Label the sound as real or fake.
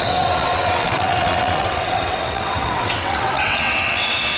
fake